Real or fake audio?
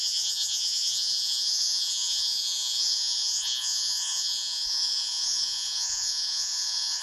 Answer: fake